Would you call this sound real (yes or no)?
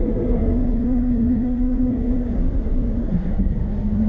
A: no